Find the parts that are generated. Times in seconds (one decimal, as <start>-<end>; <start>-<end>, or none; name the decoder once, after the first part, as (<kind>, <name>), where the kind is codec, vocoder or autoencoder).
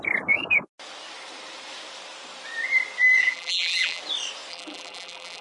3.2-4.0 (vocoder, BigVGAN v2); 4.5-5.4